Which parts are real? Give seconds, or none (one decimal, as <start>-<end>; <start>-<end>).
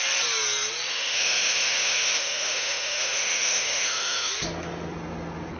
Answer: 0.0-0.9; 4.3-5.6